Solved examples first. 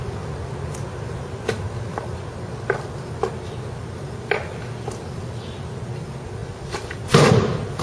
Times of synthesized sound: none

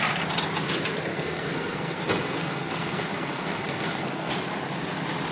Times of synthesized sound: 1.1-4.3

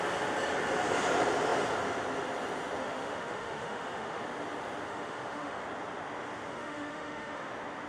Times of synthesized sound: 2.8-4.2; 4.9-5.6; 6.5-7.5